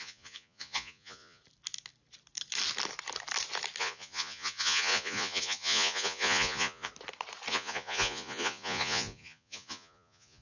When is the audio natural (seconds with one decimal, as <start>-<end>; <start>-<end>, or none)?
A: 1.4-3.8; 6.9-7.5